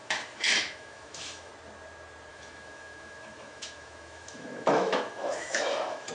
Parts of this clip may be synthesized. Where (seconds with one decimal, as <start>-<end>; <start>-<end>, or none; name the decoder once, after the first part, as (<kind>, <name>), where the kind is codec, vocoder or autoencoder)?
0.0-1.5 (autoencoder, DAC-VAE); 2.3-6.1